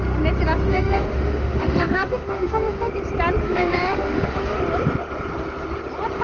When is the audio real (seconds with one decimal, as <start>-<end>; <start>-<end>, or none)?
0.0-0.7; 2.9-3.4; 4.6-6.2